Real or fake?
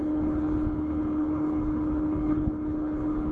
fake